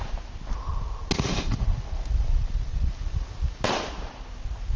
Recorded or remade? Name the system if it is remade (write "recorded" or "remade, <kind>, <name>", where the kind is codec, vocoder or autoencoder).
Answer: recorded